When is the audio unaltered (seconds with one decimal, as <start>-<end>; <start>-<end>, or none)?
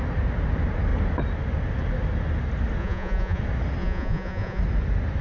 0.0-2.8; 3.4-3.8; 4.6-5.2